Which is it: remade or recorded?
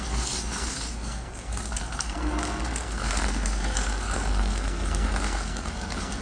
remade